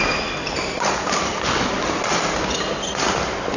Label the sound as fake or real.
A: real